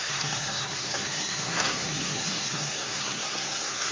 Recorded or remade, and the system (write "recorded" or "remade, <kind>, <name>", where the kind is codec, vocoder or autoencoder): remade, codec, SNAC